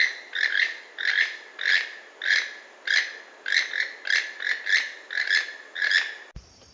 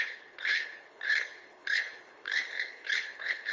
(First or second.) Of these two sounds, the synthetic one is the second